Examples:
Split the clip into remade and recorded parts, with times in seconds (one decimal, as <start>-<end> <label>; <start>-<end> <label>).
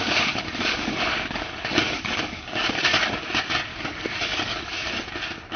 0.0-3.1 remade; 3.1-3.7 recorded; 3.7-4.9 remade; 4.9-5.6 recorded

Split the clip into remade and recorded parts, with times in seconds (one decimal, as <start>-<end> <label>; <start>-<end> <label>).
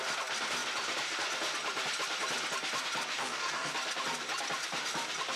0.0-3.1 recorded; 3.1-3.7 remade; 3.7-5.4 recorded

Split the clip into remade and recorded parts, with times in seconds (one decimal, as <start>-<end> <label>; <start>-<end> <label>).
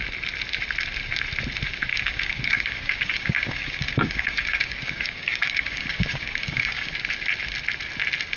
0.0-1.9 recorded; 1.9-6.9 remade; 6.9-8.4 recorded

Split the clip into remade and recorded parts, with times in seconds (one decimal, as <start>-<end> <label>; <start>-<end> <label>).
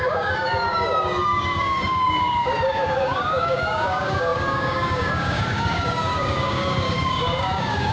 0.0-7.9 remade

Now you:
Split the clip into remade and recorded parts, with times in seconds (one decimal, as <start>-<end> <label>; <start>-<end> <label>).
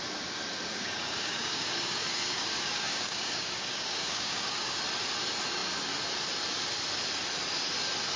0.0-0.7 recorded; 0.7-4.8 remade; 4.8-8.2 recorded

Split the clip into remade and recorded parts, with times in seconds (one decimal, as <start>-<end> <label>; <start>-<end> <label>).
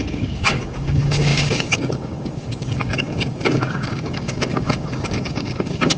0.0-6.0 remade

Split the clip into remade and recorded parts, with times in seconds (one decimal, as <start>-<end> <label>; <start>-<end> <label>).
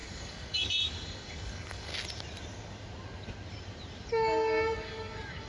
0.0-1.9 remade; 1.9-4.1 recorded; 4.1-5.5 remade